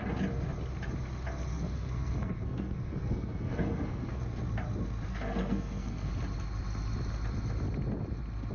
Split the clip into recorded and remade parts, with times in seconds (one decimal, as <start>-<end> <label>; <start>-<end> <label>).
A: 0.0-1.5 recorded; 1.5-4.2 remade; 4.2-5.1 recorded; 5.1-6.1 remade; 6.1-8.5 recorded